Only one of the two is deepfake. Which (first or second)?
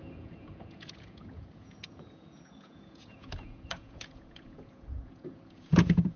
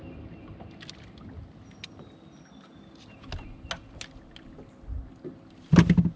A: first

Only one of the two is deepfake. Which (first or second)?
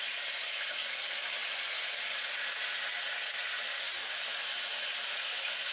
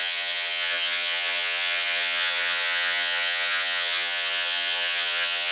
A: second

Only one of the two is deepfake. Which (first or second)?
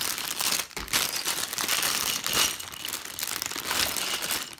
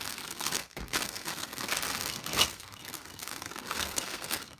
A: second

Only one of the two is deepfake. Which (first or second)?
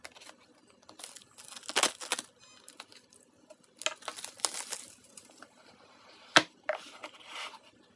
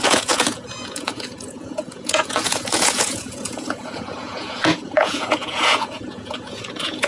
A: second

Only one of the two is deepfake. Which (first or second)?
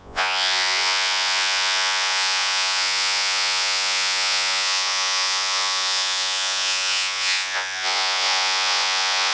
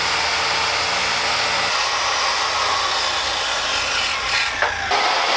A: first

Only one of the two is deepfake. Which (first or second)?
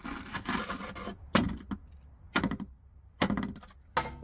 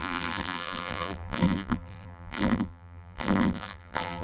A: second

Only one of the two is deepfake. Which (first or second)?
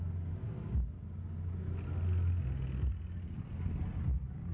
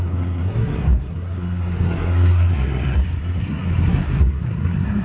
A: second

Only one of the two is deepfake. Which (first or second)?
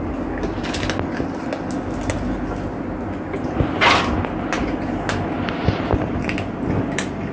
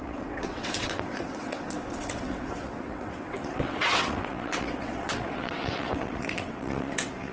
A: second